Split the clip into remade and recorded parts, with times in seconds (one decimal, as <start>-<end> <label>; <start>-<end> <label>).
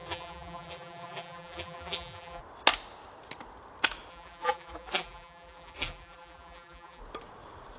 0.0-2.4 remade; 2.4-4.1 recorded; 4.1-7.0 remade; 7.0-7.8 recorded